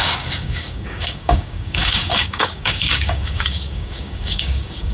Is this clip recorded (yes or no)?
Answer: no